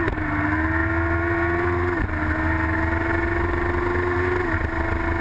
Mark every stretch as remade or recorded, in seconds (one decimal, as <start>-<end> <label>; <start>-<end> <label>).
0.0-5.2 recorded